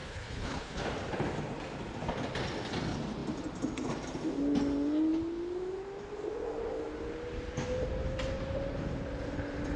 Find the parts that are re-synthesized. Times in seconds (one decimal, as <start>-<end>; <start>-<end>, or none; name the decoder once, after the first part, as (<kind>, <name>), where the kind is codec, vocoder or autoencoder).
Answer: 0.0-0.8 (codec, HILCodec)